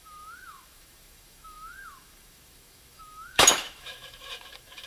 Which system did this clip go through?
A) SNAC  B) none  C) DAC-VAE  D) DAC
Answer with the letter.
C